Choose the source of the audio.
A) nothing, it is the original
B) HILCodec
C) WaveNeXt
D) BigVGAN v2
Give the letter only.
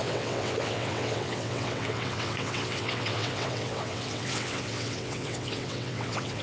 C